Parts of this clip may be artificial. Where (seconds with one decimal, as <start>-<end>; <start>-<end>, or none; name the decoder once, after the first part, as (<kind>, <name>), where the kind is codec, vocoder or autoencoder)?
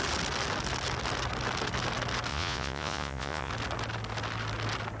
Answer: 2.3-3.5 (vocoder, Vocos)